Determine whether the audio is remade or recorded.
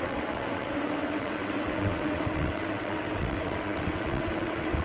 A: remade